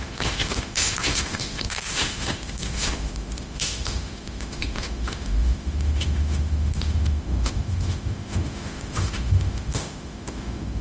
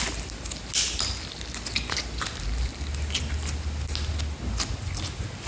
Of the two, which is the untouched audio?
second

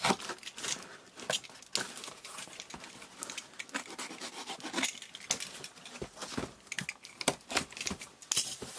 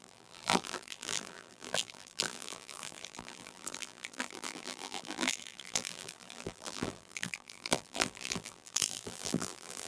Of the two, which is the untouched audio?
first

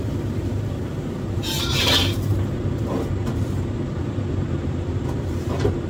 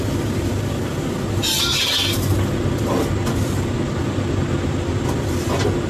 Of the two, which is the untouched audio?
second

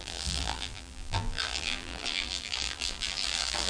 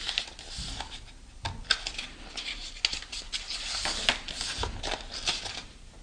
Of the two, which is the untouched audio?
second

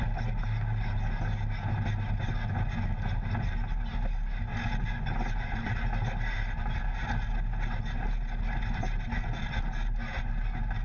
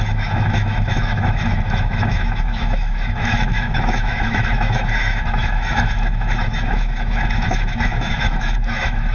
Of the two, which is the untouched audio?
first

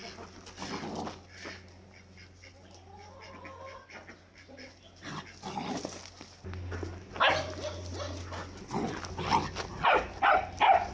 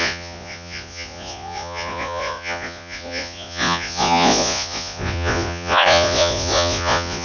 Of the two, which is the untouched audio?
first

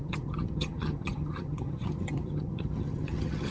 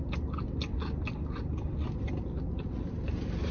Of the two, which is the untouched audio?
second